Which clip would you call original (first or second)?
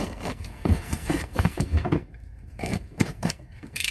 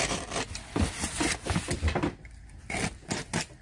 second